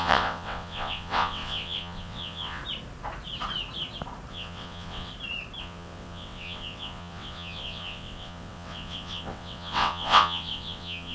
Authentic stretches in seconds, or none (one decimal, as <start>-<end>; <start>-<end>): 2.6-4.3; 5.1-5.6